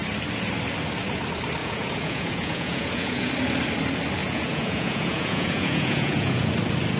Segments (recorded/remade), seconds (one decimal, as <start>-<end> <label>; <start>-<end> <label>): 0.0-1.6 recorded; 1.6-3.3 remade; 3.3-4.2 recorded; 4.2-6.5 remade; 6.5-7.0 recorded